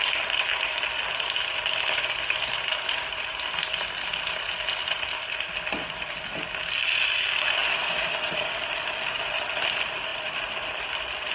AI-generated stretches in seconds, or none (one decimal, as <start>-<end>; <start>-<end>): 1.5-6.3; 7.6-8.3; 10.1-11.3